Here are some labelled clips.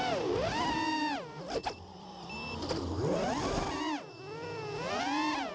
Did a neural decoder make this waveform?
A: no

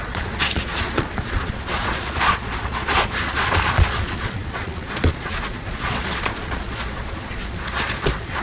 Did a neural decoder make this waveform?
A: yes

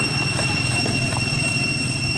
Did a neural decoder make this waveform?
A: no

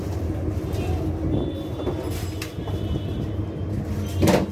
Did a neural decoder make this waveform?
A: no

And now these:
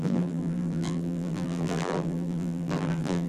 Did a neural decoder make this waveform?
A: yes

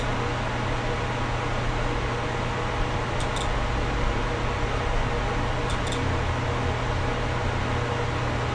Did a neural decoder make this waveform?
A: no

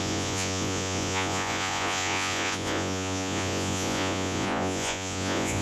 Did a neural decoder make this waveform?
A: yes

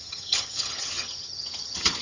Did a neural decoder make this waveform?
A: yes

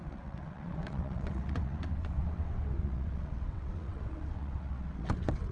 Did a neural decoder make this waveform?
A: yes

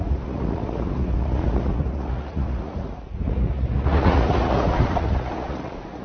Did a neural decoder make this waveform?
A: yes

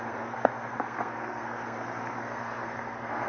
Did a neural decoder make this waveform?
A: yes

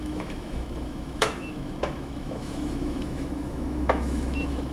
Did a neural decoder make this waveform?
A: yes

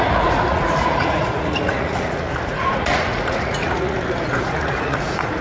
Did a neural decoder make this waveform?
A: yes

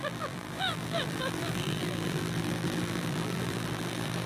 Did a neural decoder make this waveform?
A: yes